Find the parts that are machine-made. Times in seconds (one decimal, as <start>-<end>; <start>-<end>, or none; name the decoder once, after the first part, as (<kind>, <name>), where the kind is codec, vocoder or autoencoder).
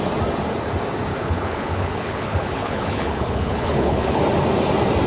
1.1-4.2 (codec, HILCodec)